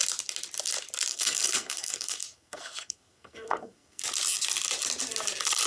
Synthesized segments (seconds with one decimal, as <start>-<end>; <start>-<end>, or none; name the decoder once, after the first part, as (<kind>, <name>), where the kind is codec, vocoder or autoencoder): 1.1-4.0 (codec, SNAC)